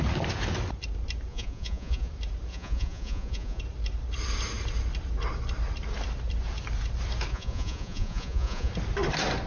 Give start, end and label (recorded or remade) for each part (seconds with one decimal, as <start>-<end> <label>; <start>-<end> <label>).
0.0-1.3 recorded; 1.3-2.1 remade; 2.1-2.5 recorded; 2.5-3.6 remade; 3.6-7.3 recorded; 7.3-8.7 remade; 8.7-9.5 recorded